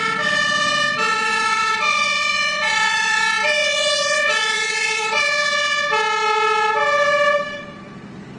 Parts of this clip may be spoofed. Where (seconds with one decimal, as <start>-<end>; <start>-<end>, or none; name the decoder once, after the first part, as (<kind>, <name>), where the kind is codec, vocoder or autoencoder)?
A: 1.1-3.2 (vocoder, Vocos); 3.6-5.2